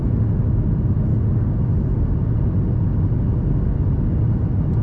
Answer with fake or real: real